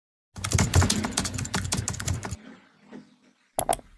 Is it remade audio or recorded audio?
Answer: recorded